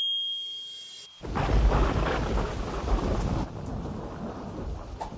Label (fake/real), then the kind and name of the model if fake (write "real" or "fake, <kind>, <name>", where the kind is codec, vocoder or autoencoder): real